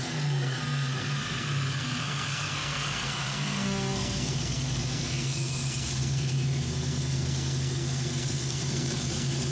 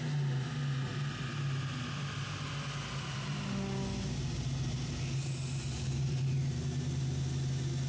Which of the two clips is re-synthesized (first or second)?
first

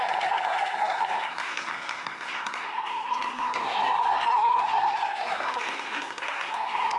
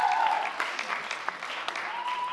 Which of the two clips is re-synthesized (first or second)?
first